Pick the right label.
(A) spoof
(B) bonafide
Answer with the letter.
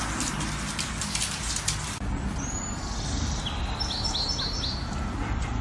B